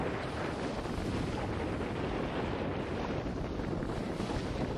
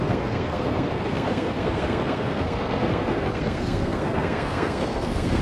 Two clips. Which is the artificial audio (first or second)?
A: second